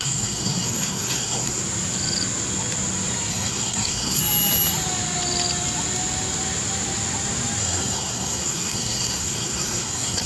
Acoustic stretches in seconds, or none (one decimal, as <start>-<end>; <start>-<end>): 1.6-3.3; 4.2-7.6